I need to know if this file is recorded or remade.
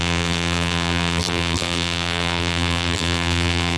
remade